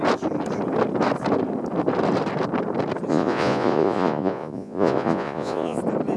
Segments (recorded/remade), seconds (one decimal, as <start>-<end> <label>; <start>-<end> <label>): 0.0-3.1 recorded; 3.1-5.8 remade; 5.8-6.2 recorded

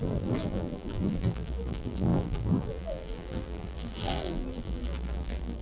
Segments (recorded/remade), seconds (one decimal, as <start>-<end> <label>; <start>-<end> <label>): 0.0-5.6 remade